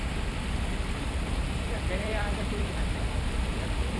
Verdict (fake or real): fake